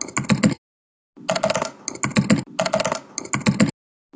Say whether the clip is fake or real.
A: real